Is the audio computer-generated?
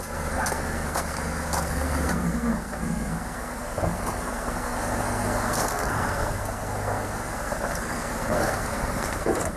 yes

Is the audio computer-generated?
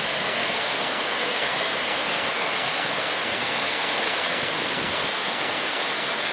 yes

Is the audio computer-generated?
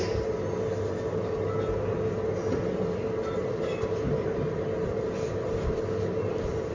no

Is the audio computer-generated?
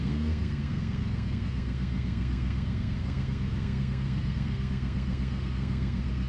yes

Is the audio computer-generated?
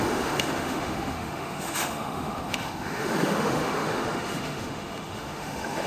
yes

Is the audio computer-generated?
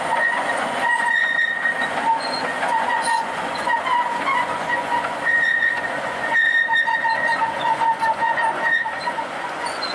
yes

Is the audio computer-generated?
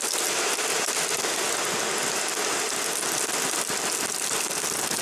no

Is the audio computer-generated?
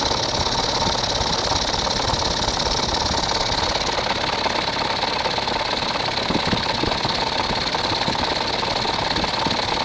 no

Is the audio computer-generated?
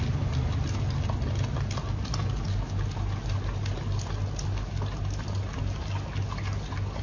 no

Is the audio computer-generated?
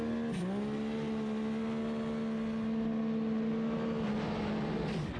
no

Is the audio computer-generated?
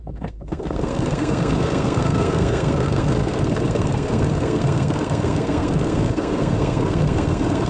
yes